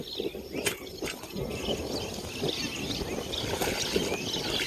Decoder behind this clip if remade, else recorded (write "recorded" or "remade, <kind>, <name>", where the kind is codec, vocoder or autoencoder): recorded